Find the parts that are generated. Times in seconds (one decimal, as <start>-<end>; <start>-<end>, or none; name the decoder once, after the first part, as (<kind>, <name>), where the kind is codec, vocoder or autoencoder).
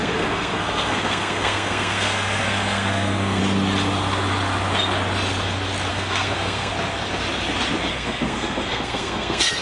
0.0-3.4 (codec, SNAC); 5.9-6.7; 7.9-9.6